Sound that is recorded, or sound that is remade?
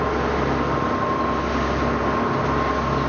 recorded